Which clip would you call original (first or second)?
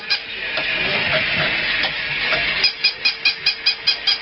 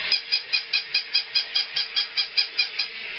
first